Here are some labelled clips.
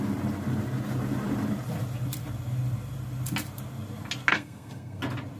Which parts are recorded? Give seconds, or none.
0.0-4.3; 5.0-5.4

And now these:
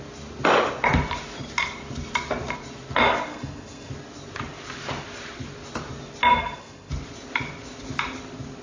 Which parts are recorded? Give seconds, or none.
0.0-3.3; 3.9-6.3; 6.9-8.6

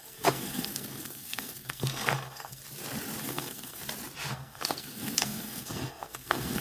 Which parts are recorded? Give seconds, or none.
2.6-3.2; 3.8-4.3

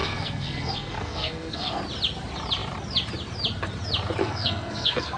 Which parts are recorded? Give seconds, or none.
1.8-4.2